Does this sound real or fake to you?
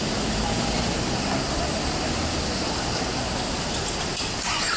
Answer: real